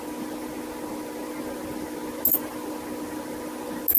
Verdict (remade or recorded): recorded